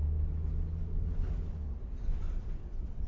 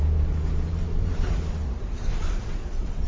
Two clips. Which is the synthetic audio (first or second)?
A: second